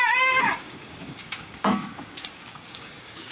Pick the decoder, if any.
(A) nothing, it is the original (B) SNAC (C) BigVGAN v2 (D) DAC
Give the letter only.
D